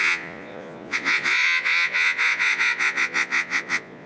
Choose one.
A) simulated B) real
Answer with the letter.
A